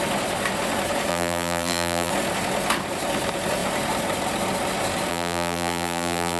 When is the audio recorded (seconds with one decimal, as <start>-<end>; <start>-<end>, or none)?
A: 0.0-1.1; 2.1-5.1